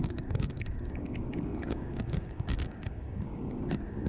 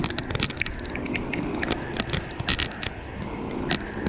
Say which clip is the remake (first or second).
first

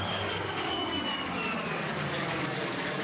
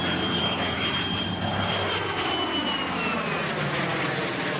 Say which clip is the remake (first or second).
first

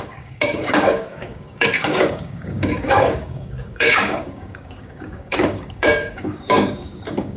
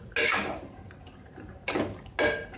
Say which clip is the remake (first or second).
first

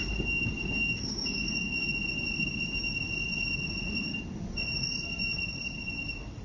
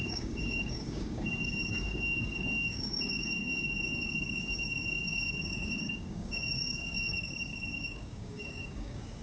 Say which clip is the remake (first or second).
second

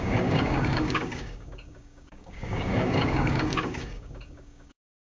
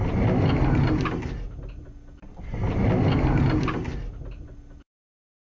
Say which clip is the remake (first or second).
first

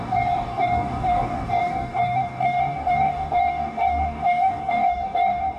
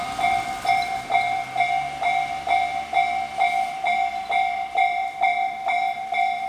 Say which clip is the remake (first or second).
first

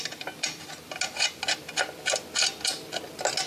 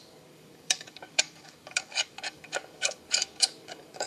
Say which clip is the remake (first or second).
second